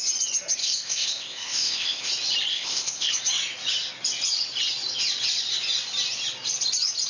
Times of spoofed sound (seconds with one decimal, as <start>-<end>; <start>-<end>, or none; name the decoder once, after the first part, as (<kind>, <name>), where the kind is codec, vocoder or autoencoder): 0.6-2.1 (codec, ZipCodec); 2.5-3.1